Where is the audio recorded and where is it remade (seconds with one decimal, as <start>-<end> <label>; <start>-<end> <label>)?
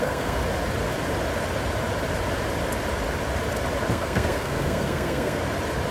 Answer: 0.0-0.4 remade; 0.4-3.9 recorded; 3.9-5.4 remade; 5.4-5.9 recorded